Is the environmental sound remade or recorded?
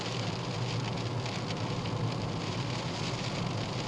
recorded